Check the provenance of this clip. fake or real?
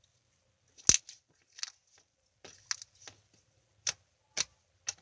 real